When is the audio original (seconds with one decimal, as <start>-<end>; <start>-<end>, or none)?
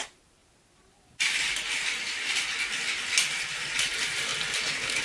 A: 0.4-3.3; 4.3-5.0